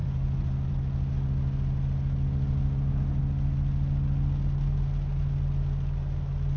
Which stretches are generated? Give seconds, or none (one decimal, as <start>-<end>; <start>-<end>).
none